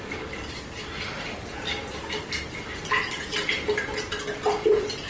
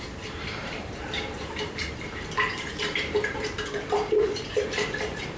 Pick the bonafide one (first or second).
first